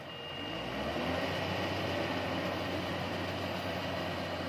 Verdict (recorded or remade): recorded